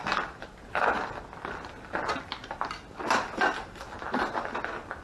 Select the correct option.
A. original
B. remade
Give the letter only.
A